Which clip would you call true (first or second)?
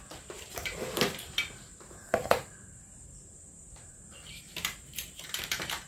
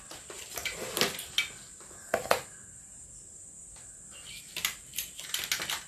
second